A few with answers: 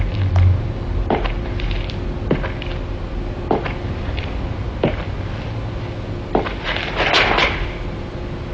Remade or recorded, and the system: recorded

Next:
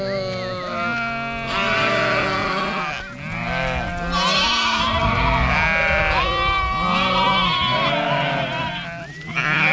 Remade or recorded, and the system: recorded